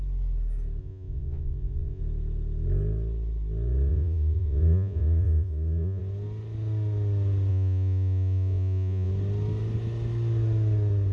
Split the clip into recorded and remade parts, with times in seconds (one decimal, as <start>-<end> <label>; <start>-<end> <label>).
0.0-0.8 recorded; 0.8-2.0 remade; 2.0-3.9 recorded; 3.9-6.0 remade; 6.0-7.5 recorded; 7.5-9.1 remade; 9.1-11.1 recorded